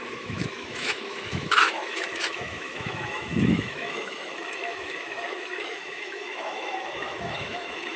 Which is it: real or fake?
fake